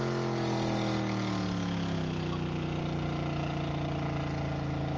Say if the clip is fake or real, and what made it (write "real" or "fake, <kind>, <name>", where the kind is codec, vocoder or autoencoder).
real